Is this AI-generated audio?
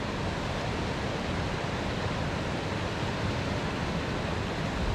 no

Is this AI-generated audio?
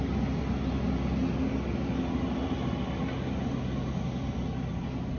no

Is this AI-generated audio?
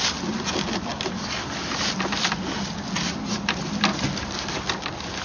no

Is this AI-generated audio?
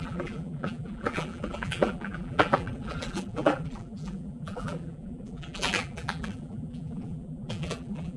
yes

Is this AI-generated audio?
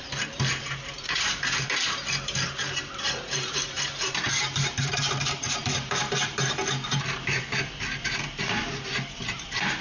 yes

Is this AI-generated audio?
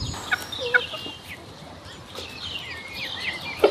yes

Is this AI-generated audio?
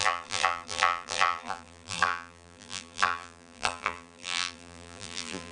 yes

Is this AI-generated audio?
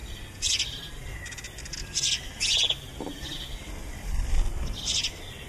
yes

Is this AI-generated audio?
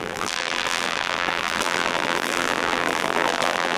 yes